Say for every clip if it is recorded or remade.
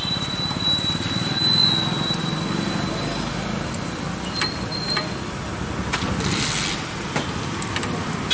recorded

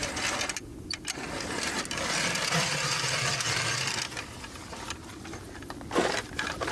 recorded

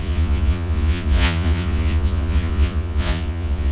remade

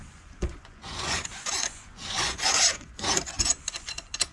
remade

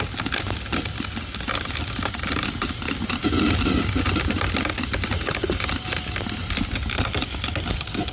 recorded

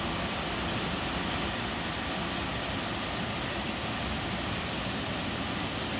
recorded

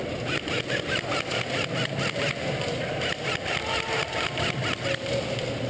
recorded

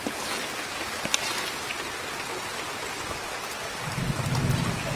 recorded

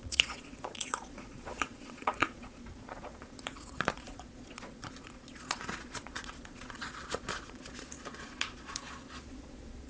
remade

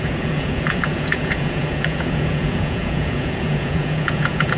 remade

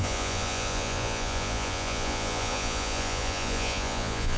remade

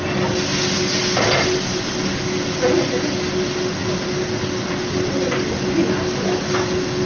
recorded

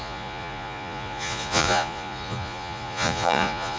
remade